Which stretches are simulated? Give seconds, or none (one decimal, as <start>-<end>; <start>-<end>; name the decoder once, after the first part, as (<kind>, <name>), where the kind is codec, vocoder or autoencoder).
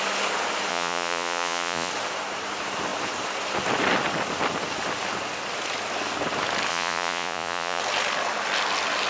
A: 0.7-1.9 (vocoder, Vocos); 6.7-7.8